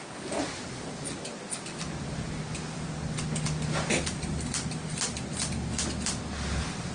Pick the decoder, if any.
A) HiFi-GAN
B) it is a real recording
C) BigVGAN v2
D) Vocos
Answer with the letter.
B